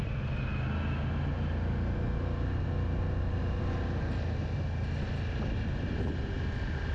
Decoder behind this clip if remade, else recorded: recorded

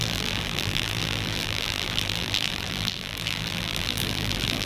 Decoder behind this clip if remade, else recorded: remade, vocoder, BigVGAN v2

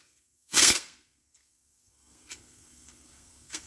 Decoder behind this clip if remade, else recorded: remade, codec, SNAC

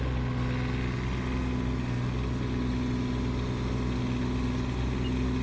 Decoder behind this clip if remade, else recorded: recorded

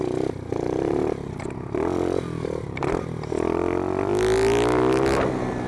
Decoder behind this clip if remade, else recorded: recorded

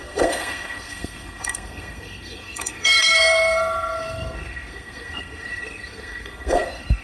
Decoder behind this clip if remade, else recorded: remade, codec, SNAC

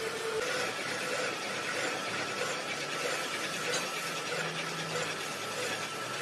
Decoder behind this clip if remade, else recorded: recorded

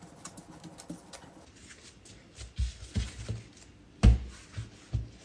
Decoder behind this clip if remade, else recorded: recorded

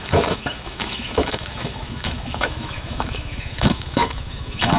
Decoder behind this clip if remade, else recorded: remade, autoencoder, DAC-VAE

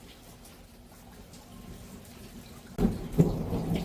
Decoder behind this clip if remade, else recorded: recorded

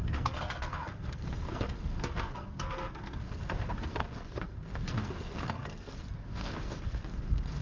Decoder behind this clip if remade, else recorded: remade, codec, SNAC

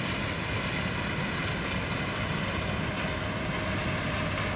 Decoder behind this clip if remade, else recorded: recorded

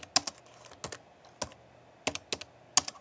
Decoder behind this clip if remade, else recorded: recorded